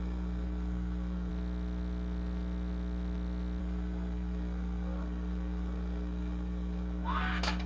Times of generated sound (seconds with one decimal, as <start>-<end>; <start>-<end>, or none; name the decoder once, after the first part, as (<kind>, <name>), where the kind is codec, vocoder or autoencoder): 0.0-1.3 (codec, SNAC); 3.6-7.7